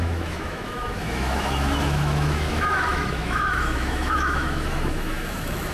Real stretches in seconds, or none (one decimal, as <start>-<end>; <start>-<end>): none